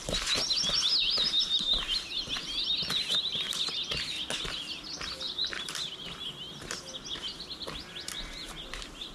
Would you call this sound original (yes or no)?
yes